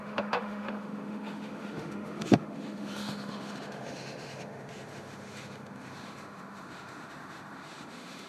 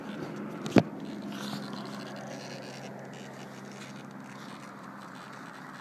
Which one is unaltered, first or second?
second